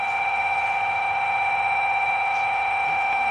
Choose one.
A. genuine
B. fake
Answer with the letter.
B